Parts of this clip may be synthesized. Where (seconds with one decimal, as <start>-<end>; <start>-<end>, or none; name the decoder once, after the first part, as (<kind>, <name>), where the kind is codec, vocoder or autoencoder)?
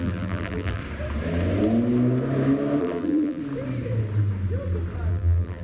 0.0-0.8 (vocoder, BigVGAN v2); 2.8-3.4; 5.1-5.6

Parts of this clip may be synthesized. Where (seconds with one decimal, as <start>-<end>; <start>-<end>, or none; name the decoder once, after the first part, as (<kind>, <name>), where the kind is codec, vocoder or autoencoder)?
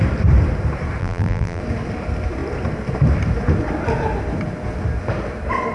1.0-1.6 (vocoder, BigVGAN v2)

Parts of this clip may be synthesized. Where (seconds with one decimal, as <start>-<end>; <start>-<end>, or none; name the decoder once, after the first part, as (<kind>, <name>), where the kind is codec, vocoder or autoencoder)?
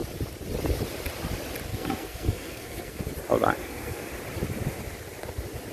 1.7-3.0 (codec, SNAC); 3.6-4.1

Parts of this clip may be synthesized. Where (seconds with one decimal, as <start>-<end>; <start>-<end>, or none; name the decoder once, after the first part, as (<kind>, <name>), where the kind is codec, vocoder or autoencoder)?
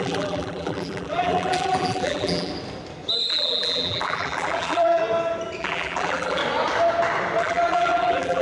0.0-2.5 (vocoder, BigVGAN v2); 3.3-5.0; 5.6-6.4; 7.4-8.4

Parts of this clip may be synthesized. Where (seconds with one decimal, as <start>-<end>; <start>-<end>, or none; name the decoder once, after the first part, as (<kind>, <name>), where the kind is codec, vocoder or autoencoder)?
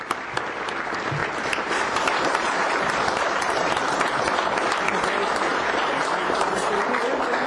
1.2-4.2 (vocoder, BigVGAN v2); 5.5-6.8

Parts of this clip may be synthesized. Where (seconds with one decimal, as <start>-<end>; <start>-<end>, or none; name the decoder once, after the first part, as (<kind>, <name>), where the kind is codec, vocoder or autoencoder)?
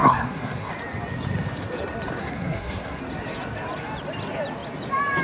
0.0-0.7 (codec, SNAC); 2.2-3.0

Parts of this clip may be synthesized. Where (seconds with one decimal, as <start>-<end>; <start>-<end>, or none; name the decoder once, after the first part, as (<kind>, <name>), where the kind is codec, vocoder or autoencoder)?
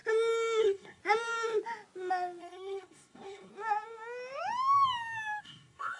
0.6-1.0 (codec, SNAC); 2.4-3.5; 5.4-6.0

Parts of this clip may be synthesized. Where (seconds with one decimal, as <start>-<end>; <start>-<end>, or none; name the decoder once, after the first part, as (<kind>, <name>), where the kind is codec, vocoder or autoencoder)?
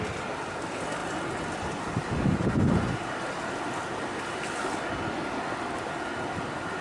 none